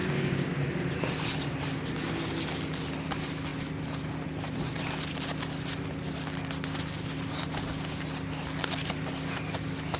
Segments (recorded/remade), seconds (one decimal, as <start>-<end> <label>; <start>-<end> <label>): 0.0-0.6 remade; 0.6-10.0 recorded